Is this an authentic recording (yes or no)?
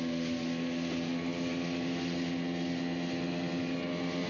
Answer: yes